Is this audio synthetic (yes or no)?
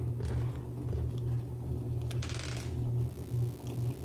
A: no